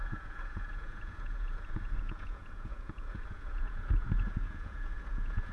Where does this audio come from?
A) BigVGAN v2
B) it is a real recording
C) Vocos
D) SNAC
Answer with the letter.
C